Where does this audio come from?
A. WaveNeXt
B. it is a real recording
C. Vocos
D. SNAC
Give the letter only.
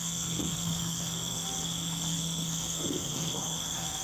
D